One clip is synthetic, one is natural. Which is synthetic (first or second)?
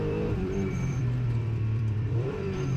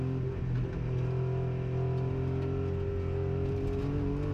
first